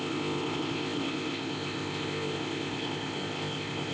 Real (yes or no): no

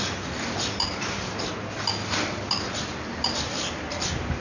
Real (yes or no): yes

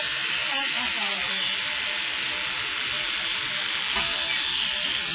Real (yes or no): yes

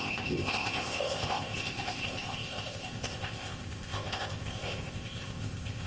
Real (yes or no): no